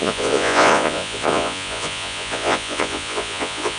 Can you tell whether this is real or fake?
fake